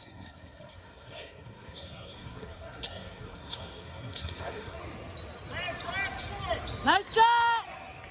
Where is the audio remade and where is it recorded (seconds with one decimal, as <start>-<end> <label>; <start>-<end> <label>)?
0.0-4.8 remade; 4.8-8.1 recorded

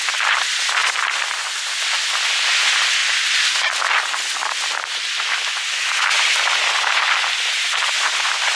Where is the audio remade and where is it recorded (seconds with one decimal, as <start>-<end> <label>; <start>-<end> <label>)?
0.0-8.6 recorded

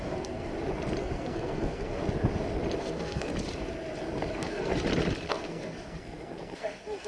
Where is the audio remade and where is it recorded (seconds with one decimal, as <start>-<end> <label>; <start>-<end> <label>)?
0.0-0.5 remade; 0.5-1.0 recorded; 1.0-2.0 remade; 2.0-2.8 recorded; 2.8-3.3 remade; 3.3-4.3 recorded; 4.3-4.7 remade; 4.7-5.3 recorded; 5.3-7.1 remade